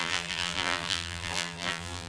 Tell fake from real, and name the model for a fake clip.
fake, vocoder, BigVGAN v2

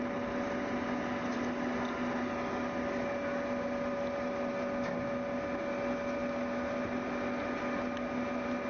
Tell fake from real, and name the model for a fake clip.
real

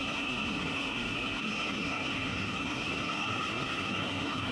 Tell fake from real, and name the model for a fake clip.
fake, codec, SNAC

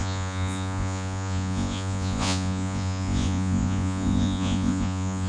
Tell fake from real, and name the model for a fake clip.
fake, vocoder, Vocos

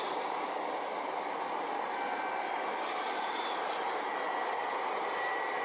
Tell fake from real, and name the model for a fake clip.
real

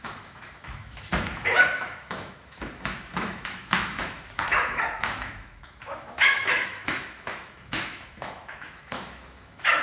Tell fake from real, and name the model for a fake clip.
fake, autoencoder, DAC-VAE